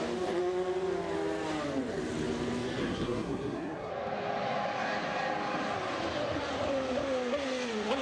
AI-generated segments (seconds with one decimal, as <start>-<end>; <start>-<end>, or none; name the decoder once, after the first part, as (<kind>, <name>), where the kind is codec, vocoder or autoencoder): 2.8-3.9 (codec, SNAC)